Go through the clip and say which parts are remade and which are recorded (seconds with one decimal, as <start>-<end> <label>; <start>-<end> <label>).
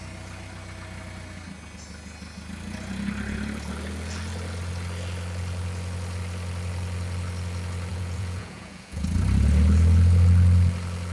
0.0-7.9 recorded; 7.9-9.0 remade; 9.0-11.1 recorded